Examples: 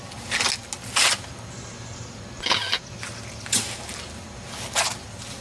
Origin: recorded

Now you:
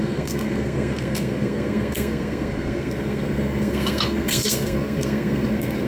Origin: remade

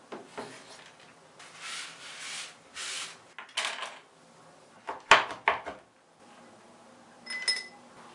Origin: recorded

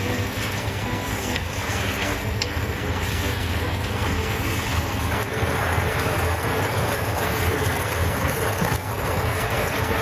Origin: remade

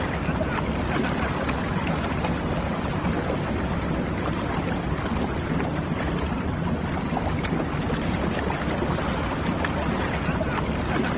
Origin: recorded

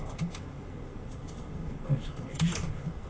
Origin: remade